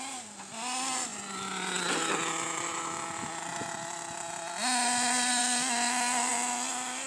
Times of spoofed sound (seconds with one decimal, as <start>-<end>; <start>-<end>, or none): none